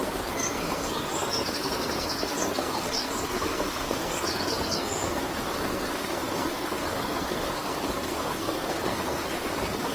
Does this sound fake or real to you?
fake